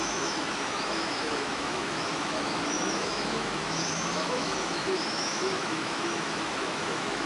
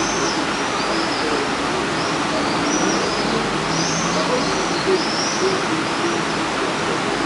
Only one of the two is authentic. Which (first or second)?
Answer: second